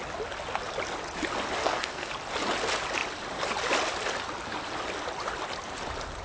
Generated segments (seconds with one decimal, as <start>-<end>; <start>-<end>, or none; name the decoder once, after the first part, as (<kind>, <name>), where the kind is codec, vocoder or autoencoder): 1.6-2.1 (codec, SNAC)